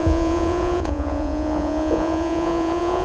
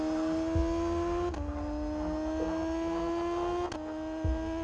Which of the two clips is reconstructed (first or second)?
first